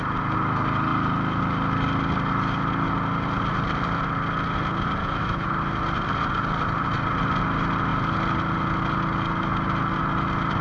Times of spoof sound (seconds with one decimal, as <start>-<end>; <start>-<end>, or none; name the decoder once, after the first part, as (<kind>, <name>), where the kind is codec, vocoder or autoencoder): 5.0-5.5 (autoencoder, DAC-VAE)